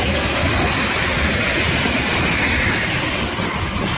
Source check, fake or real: real